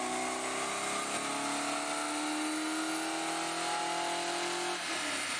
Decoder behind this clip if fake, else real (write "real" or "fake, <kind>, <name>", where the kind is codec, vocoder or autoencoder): real